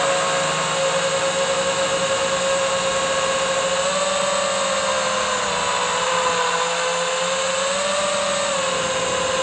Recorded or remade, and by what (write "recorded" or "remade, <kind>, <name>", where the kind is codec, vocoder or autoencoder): recorded